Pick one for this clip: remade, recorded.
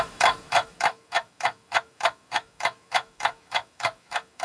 remade